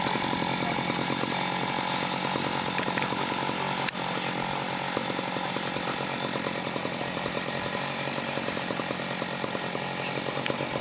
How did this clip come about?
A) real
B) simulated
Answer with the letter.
A